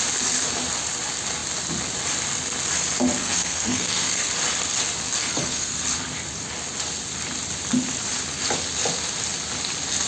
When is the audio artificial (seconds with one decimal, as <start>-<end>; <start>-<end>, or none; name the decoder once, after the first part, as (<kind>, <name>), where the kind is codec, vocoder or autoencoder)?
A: 3.2-4.3 (codec, SNAC); 5.2-5.8